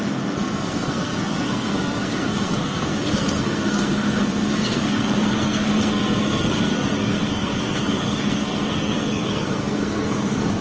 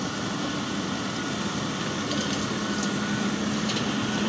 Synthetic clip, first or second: first